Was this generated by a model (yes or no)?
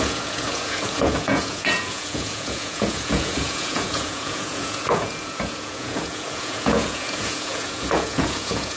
yes